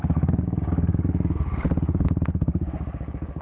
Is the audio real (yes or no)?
no